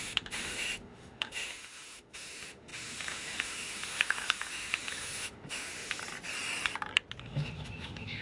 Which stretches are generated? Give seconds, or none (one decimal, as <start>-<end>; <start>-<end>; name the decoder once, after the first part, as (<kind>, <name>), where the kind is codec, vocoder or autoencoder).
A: 0.0-6.0 (autoencoder, DAC-VAE); 7.2-8.2